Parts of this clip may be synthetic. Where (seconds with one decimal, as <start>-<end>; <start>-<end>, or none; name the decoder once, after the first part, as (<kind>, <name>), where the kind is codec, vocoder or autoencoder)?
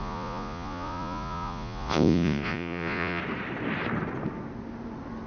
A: 0.0-3.2 (vocoder, Vocos)